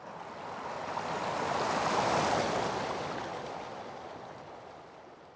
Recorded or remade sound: recorded